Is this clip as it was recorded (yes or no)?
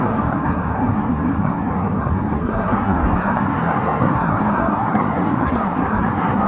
no